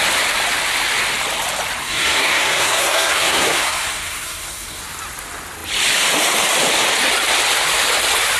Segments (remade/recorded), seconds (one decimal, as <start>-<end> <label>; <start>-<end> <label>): 0.0-1.8 recorded; 1.8-4.8 remade; 4.8-8.4 recorded